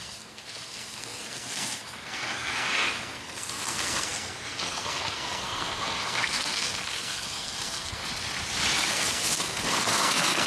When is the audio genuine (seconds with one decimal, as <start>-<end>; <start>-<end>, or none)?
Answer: 8.0-8.9